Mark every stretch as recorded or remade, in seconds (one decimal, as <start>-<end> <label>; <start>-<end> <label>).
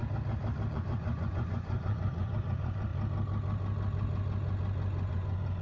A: 0.0-0.7 recorded; 0.7-2.9 remade; 2.9-5.1 recorded; 5.1-5.6 remade